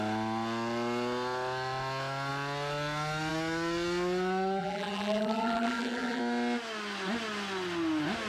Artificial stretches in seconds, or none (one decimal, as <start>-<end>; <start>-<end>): 4.6-6.2